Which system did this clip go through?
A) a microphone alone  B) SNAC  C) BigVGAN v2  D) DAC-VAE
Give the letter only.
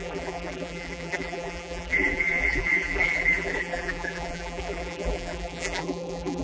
C